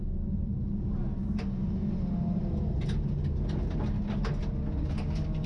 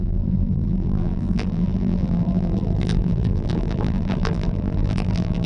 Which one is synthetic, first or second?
second